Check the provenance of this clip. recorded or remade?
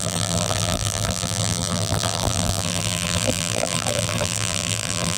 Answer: remade